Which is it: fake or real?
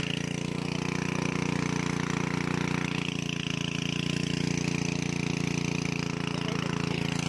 real